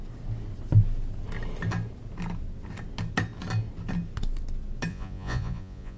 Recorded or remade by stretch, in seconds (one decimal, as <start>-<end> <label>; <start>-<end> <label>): 0.0-4.9 recorded; 4.9-6.0 remade